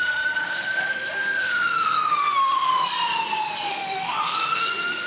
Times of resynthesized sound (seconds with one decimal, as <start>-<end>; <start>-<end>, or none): 0.0-2.7; 3.7-5.1